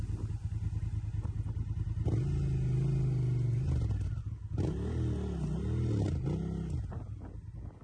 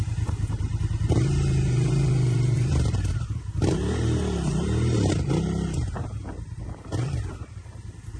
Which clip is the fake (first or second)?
second